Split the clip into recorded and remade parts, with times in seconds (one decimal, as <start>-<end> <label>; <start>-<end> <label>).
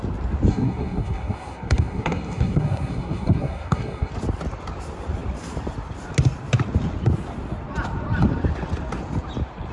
0.0-0.5 recorded; 0.5-4.1 remade; 4.1-9.7 recorded